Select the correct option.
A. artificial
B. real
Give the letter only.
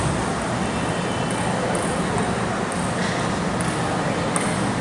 B